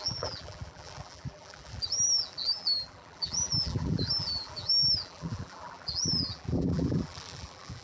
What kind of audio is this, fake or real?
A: fake